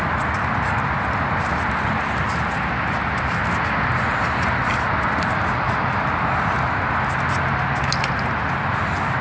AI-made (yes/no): no